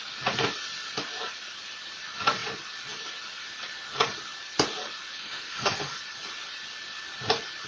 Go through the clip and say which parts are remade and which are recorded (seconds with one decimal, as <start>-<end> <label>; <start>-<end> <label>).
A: 0.0-5.2 recorded; 5.2-6.0 remade; 6.0-7.7 recorded